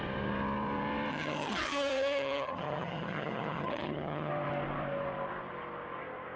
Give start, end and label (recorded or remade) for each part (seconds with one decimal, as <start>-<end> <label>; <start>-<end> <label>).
0.0-1.1 recorded; 1.1-4.3 remade; 4.3-6.4 recorded